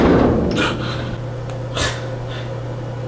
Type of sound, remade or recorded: recorded